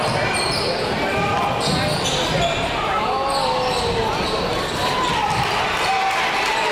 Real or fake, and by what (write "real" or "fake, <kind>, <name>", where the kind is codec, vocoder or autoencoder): real